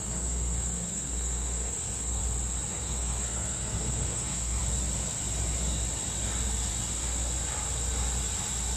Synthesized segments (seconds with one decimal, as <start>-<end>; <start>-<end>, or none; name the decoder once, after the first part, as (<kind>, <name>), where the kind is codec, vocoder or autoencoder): 0.0-2.2 (codec, SNAC); 2.7-4.6